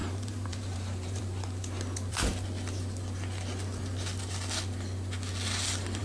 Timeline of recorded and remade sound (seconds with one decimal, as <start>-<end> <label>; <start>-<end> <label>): 0.0-1.2 remade; 1.2-6.0 recorded